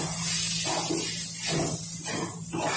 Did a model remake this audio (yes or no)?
no